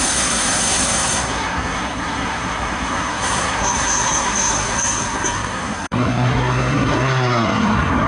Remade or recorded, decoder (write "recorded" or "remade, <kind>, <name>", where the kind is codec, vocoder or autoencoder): remade, codec, SNAC